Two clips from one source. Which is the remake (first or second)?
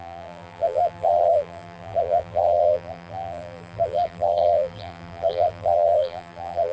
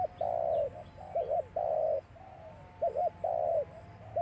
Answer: first